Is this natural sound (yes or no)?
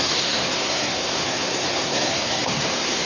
no